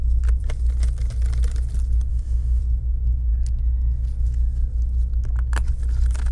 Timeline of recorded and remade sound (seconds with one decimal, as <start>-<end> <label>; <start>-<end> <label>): 0.0-2.1 recorded; 2.1-2.6 remade; 2.6-6.3 recorded